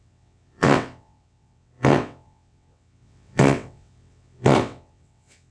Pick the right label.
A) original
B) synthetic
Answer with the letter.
B